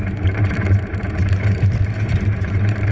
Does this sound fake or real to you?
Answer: fake